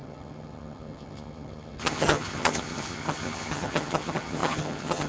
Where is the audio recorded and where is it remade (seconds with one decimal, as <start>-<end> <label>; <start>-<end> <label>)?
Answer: 0.0-5.1 remade